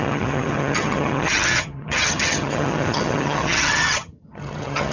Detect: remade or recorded remade